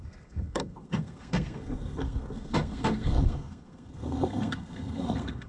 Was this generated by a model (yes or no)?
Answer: yes